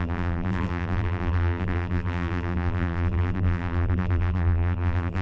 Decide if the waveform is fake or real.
fake